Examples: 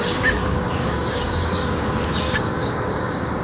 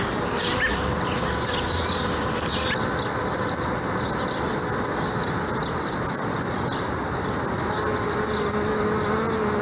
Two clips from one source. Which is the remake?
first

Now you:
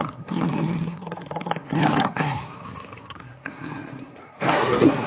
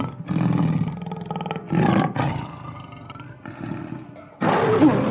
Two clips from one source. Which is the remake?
first